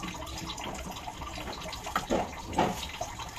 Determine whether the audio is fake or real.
real